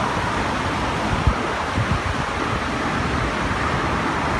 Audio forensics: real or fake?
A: real